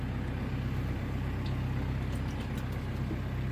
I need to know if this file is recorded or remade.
recorded